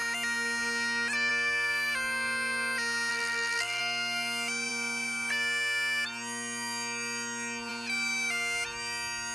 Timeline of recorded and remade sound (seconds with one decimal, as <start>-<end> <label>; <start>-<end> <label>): 0.0-3.1 recorded; 3.1-3.8 remade; 3.8-9.3 recorded

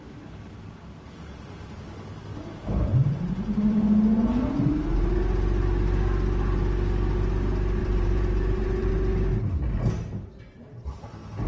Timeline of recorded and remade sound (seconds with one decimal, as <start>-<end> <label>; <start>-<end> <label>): 0.0-2.3 recorded; 2.3-3.2 remade; 3.2-7.8 recorded; 7.8-8.9 remade; 8.9-11.5 recorded

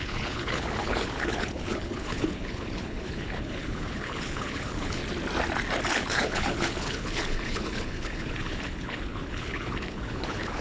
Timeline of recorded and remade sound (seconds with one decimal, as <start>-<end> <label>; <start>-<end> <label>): 0.0-5.0 remade; 5.0-5.9 recorded; 5.9-10.6 remade

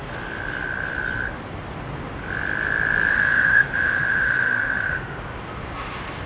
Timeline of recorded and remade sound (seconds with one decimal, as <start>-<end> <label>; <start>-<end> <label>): 0.0-3.1 recorded; 3.1-5.2 remade; 5.2-6.3 recorded

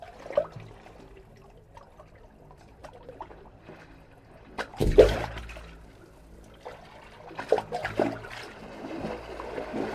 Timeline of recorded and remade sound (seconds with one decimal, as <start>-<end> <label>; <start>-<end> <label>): 0.0-2.8 recorded; 2.8-3.6 remade; 3.6-4.8 recorded; 4.8-5.4 remade; 5.4-7.8 recorded; 7.8-9.0 remade; 9.0-9.9 recorded